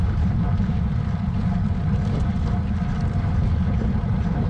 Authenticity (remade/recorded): remade